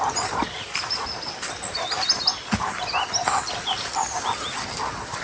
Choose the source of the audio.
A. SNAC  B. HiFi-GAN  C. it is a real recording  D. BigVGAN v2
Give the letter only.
C